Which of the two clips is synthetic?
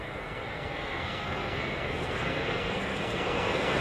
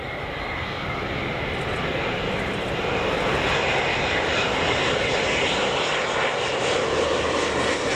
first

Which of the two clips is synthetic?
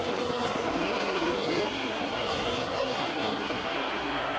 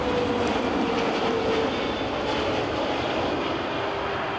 first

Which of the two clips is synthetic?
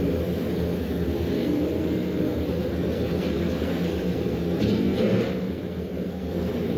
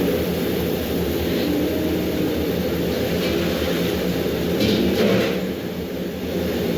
first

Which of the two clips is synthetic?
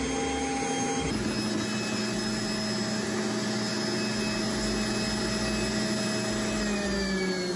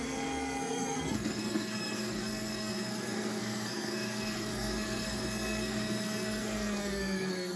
second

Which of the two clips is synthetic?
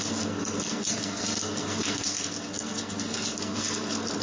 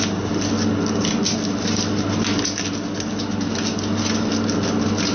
first